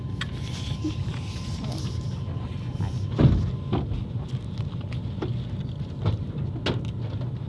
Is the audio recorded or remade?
recorded